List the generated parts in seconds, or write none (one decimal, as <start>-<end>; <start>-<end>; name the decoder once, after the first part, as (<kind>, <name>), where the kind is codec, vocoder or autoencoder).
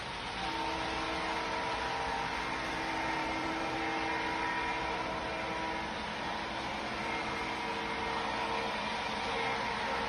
3.2-3.8 (vocoder, BigVGAN v2)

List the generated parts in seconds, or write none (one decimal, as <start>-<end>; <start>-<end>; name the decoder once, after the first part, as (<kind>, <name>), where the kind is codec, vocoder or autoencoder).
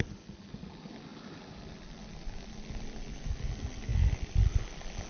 1.1-1.7 (vocoder, BigVGAN v2); 3.9-4.6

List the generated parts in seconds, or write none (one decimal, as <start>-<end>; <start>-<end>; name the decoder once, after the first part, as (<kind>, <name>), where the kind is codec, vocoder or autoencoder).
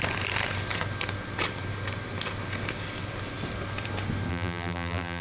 4.3-5.2 (vocoder, BigVGAN v2)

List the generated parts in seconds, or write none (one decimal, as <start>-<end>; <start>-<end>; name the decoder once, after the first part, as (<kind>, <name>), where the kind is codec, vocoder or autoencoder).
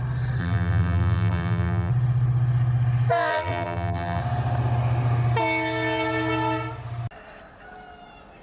0.4-1.9 (vocoder, BigVGAN v2); 3.3-4.2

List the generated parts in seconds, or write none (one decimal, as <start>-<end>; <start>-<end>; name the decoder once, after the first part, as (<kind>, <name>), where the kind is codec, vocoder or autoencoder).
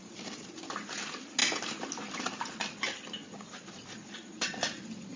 none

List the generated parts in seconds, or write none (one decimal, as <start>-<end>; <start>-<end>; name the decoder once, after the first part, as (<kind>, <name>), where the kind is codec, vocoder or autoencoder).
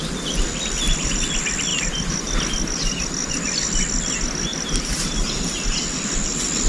4.5-5.1 (vocoder, BigVGAN v2)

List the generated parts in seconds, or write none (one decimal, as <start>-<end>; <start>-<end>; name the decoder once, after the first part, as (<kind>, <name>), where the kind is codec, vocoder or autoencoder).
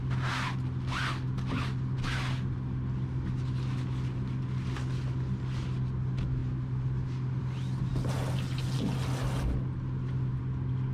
none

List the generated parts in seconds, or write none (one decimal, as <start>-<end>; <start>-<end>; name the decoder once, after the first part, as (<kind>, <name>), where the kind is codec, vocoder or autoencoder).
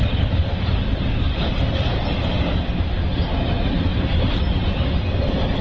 3.9-4.8 (vocoder, BigVGAN v2)